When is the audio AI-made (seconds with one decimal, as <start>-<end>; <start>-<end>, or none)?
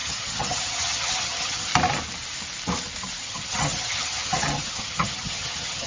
0.0-1.7; 3.2-5.9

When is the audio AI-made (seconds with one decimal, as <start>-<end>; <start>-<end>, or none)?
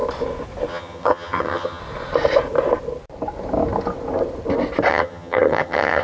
0.7-1.8; 4.9-6.0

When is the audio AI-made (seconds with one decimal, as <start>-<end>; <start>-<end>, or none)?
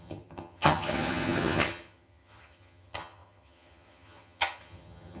0.0-5.2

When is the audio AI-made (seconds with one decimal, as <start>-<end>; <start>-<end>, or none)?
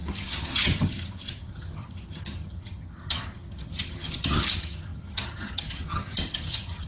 0.0-6.9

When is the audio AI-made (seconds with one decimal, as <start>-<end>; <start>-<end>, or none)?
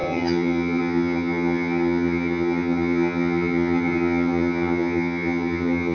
0.0-5.9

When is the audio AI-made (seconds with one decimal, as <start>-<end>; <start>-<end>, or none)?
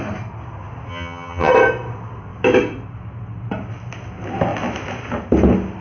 0.9-1.5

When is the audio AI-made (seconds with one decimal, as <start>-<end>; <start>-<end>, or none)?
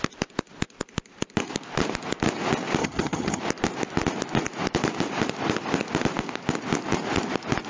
2.8-3.4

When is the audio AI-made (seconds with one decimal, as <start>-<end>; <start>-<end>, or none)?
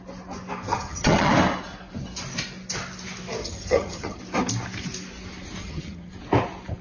0.7-1.3; 3.4-4.2; 5.6-6.1